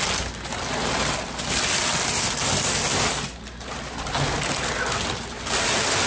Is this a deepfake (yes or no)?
no